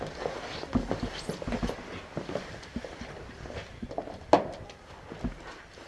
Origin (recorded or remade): recorded